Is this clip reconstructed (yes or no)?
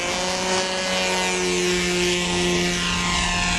no